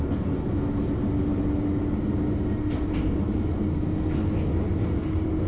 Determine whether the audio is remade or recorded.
recorded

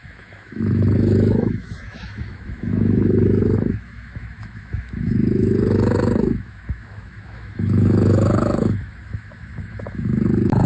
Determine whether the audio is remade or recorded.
remade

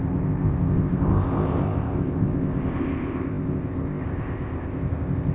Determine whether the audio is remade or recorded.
remade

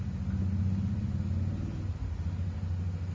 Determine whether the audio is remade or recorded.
recorded